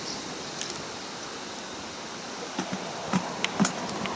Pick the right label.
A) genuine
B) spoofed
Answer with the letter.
A